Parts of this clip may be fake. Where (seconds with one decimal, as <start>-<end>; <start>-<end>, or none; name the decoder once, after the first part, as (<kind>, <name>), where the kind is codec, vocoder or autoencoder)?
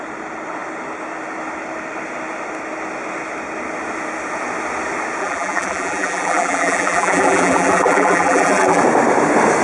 5.2-8.8 (vocoder, BigVGAN v2)